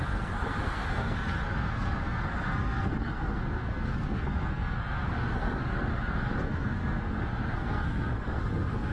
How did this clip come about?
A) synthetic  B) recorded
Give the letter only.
A